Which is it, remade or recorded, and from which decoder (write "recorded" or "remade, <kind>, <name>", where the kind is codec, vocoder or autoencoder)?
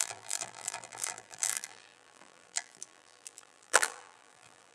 remade, vocoder, BigVGAN v2